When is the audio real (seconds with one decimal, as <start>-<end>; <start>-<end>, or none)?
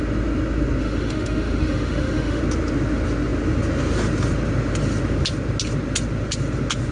0.0-0.8; 2.4-6.9